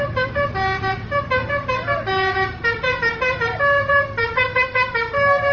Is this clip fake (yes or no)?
no